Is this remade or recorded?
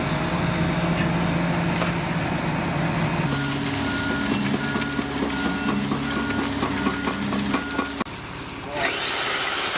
recorded